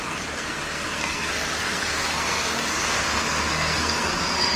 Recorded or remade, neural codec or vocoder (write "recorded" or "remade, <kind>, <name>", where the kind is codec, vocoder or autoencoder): remade, codec, SNAC